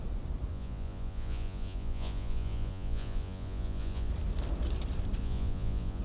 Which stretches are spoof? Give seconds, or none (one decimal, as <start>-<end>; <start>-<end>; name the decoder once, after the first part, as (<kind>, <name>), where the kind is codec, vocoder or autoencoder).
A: 0.5-4.1 (vocoder, Vocos); 5.2-6.0